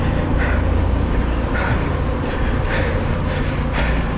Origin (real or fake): real